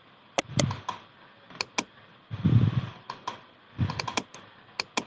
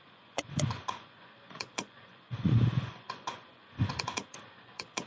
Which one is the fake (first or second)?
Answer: second